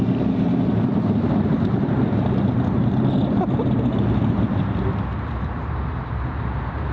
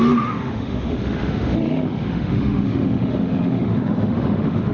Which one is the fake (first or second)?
second